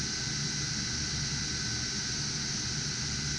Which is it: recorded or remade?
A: recorded